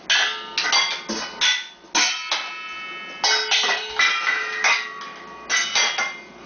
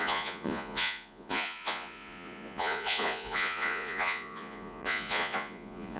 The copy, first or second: second